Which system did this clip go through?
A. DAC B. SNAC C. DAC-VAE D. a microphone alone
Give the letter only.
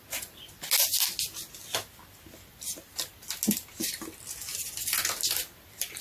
D